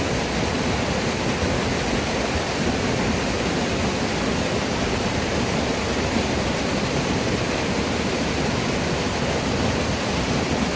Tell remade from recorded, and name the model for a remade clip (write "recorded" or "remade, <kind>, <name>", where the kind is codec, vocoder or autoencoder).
recorded